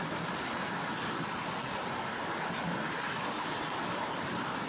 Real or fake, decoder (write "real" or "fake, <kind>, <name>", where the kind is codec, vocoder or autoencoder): real